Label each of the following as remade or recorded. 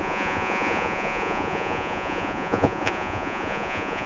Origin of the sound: remade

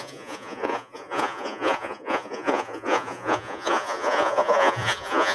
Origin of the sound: remade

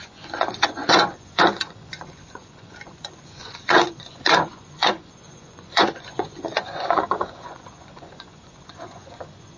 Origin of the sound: remade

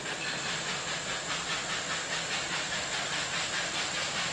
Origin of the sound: recorded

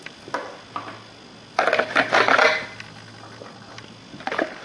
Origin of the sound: recorded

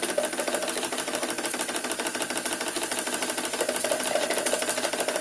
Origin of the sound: recorded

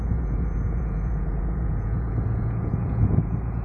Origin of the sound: remade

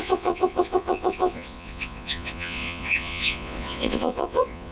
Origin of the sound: remade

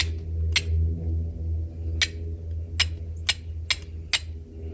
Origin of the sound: recorded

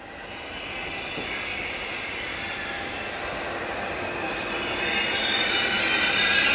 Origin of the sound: recorded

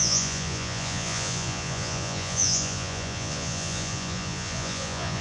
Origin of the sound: remade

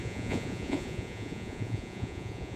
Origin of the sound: remade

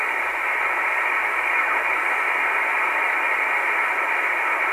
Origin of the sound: recorded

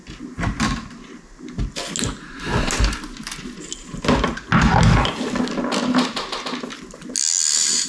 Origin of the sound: recorded